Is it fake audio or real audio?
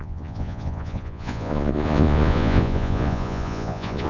fake